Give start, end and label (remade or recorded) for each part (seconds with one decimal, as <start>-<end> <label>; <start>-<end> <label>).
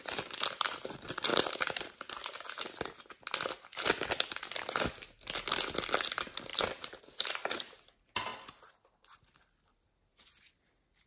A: 0.0-1.3 recorded; 1.3-2.0 remade; 2.0-6.5 recorded; 6.5-7.0 remade; 7.0-11.1 recorded